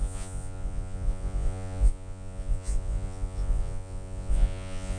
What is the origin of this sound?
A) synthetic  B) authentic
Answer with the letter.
A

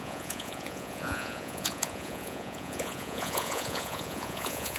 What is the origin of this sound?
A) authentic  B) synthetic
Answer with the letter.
B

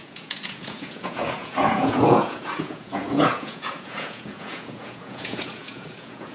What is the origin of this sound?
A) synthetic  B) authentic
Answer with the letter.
A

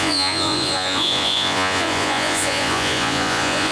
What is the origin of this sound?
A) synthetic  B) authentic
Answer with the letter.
A